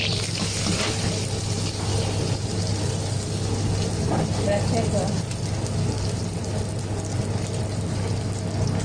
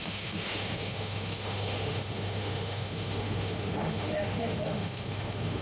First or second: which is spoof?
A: second